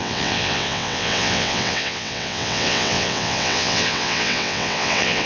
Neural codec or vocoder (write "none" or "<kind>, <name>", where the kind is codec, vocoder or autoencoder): vocoder, WaveNeXt